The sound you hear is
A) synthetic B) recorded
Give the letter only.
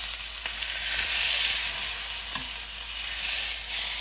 B